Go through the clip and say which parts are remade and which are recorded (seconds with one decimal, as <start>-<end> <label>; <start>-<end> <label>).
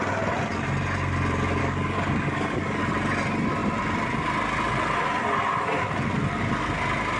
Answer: 0.0-1.6 recorded; 1.6-2.8 remade; 2.8-7.2 recorded